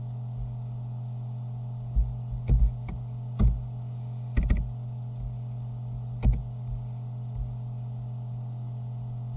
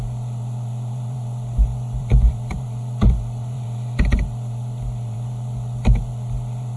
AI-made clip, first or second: second